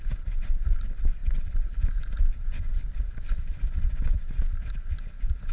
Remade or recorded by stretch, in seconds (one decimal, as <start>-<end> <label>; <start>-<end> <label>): 0.0-5.5 recorded